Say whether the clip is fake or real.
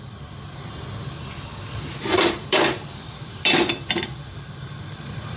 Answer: fake